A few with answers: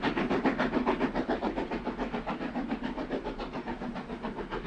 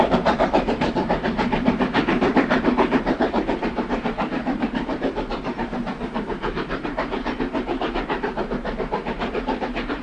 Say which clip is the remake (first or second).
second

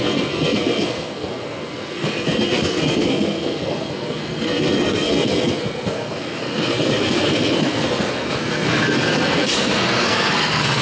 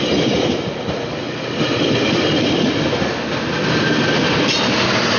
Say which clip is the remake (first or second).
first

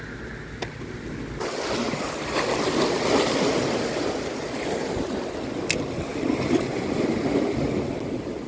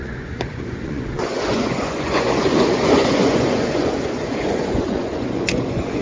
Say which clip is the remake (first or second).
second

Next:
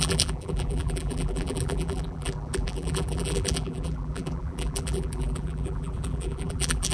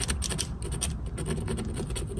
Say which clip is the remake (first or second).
first